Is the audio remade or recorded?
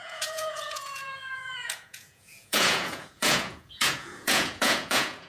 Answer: remade